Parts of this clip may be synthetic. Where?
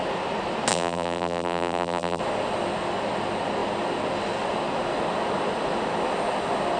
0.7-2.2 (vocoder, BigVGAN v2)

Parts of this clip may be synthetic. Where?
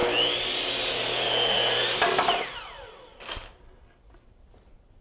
none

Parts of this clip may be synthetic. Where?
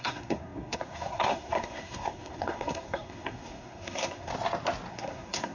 0.0-4.3 (codec, SNAC); 4.9-5.5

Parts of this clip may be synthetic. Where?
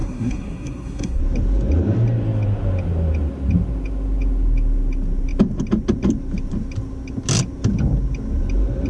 0.0-1.2 (codec, SNAC)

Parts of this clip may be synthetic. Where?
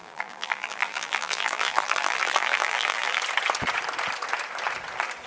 0.0-3.2 (vocoder, BigVGAN v2)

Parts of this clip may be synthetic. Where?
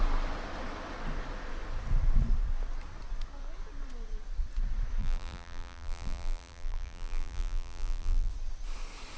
5.0-8.3 (vocoder, BigVGAN v2)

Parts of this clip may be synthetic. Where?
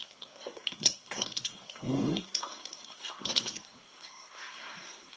0.0-5.2 (codec, SNAC)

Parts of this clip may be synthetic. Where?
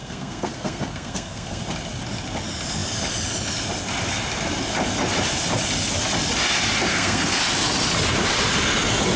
0.0-1.6 (codec, SNAC); 6.9-7.4